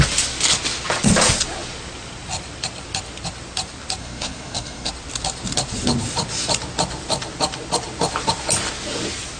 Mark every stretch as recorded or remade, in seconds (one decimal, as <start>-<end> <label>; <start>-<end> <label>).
0.0-4.0 recorded; 4.0-4.9 remade; 4.9-9.4 recorded